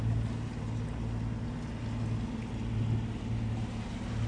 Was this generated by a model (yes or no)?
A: no